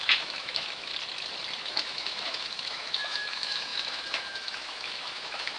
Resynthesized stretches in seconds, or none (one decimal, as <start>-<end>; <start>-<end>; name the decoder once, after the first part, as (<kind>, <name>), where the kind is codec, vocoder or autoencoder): 0.0-0.9 (autoencoder, DAC-VAE); 1.6-5.6